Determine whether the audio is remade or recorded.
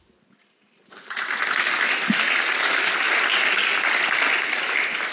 recorded